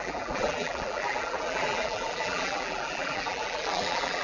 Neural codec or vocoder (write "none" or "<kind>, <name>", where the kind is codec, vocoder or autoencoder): vocoder, BigVGAN v2